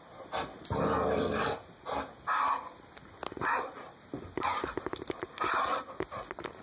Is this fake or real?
real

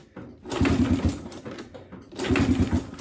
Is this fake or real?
real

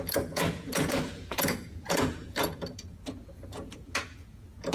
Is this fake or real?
fake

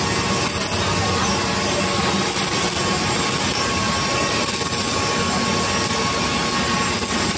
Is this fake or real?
real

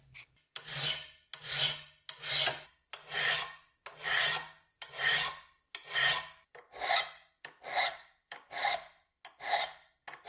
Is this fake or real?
real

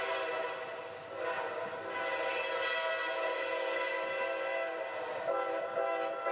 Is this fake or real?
real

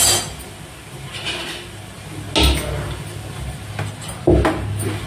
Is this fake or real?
real